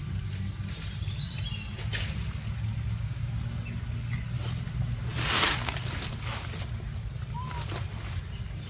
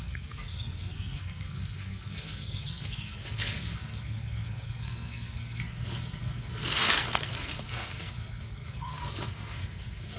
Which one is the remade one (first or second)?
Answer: second